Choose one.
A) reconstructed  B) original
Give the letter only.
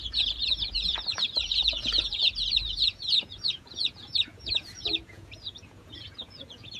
A